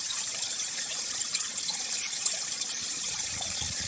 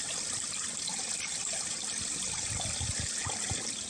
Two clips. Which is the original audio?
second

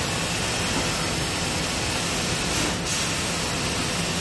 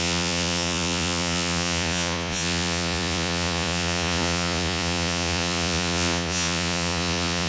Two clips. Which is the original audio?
first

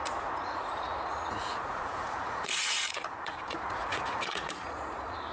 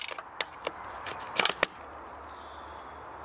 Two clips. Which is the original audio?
second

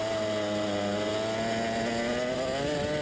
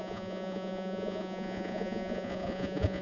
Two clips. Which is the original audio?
first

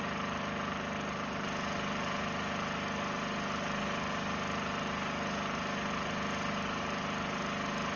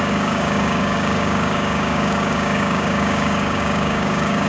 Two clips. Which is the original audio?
first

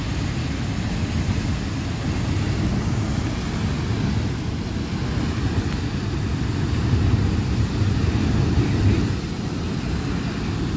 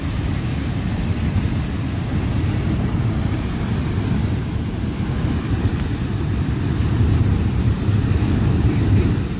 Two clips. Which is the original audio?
first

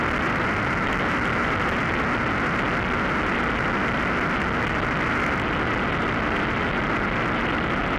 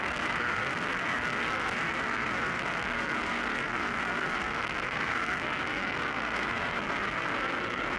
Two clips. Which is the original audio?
first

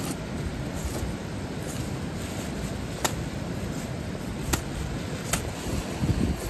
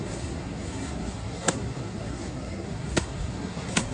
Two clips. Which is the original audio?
first